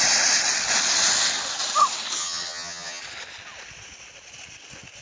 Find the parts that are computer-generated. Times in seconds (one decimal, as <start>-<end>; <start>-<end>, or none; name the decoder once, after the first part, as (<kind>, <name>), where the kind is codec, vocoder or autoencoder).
2.2-3.0 (vocoder, HiFi-GAN)